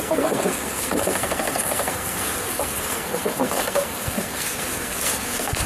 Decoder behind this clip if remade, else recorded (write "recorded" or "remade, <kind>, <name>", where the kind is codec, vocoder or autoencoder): remade, codec, SNAC